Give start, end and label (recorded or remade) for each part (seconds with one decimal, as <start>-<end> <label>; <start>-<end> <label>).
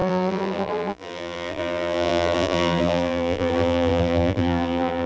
0.0-5.1 remade